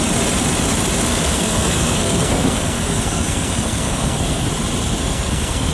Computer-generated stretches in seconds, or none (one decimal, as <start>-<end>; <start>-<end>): 1.1-4.5; 5.0-5.7